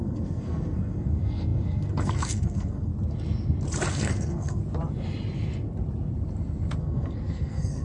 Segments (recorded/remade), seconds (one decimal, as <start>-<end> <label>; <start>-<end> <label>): 0.0-2.9 remade; 2.9-3.9 recorded; 3.9-4.6 remade; 4.6-6.8 recorded; 6.8-7.8 remade